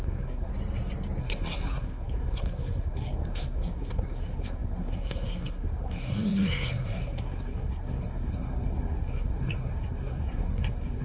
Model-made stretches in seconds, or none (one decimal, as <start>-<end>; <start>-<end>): 0.0-0.5; 1.2-11.0